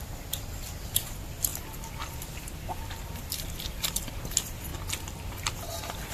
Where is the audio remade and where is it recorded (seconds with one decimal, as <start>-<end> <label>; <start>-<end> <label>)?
0.0-4.7 remade; 4.7-5.3 recorded; 5.3-6.1 remade